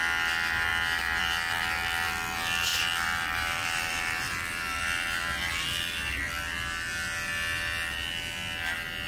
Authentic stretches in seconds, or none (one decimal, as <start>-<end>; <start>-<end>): 0.0-2.7; 6.3-9.1